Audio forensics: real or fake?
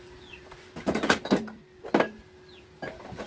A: real